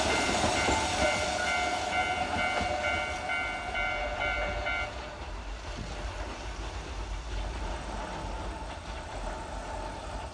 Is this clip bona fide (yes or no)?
yes